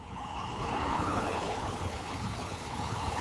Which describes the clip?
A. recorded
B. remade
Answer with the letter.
B